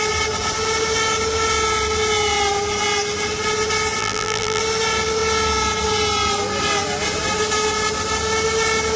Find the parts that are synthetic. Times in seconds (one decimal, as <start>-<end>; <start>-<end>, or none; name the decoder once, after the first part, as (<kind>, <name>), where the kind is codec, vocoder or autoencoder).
4.0-4.6 (vocoder, BigVGAN v2)